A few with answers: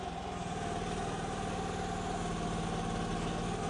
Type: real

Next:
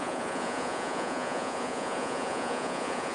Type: fake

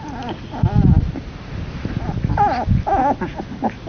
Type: real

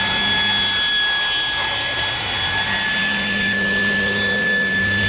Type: real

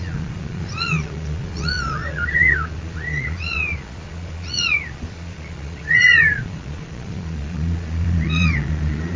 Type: fake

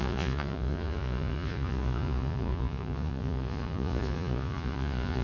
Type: fake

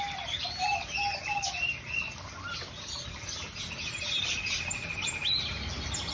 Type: real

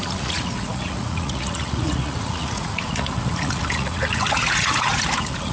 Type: fake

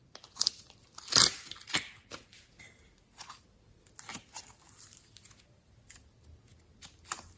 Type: real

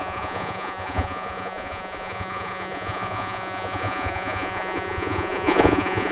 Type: fake